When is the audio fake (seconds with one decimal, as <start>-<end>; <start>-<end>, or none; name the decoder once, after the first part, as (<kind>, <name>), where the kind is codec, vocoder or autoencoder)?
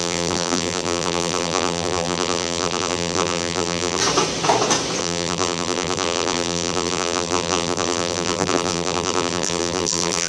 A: 0.0-4.0 (vocoder, BigVGAN v2); 5.0-10.3